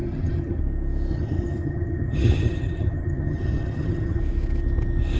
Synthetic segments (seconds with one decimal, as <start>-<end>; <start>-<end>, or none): 0.0-0.6; 1.1-4.2